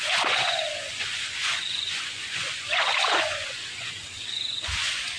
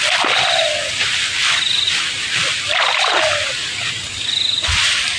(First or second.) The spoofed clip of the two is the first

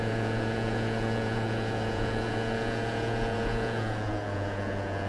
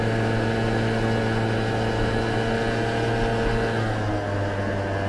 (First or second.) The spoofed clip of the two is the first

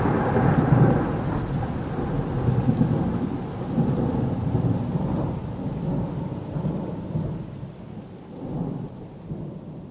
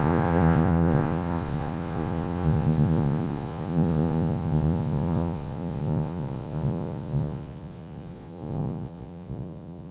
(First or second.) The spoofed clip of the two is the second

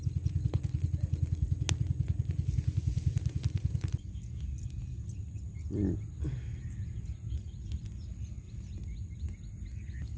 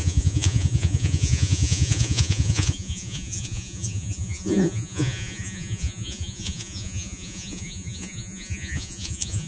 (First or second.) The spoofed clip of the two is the second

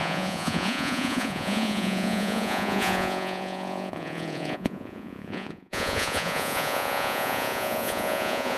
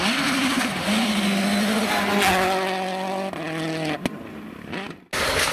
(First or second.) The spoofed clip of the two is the first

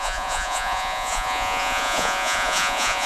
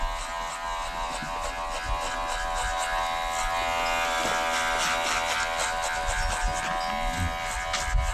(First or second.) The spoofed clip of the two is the first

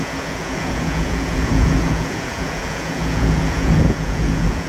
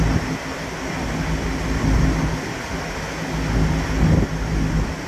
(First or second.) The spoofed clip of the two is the first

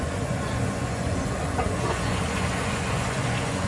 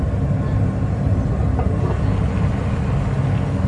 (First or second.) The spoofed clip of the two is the first